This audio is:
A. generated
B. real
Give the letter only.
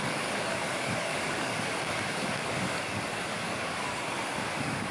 A